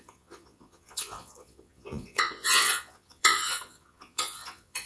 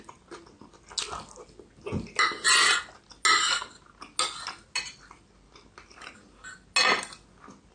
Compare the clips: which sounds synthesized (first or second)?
first